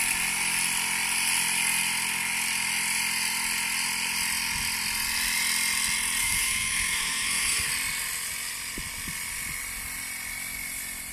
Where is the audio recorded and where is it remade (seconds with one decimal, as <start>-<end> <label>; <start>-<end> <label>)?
0.0-6.2 recorded; 6.2-7.7 remade; 7.7-11.1 recorded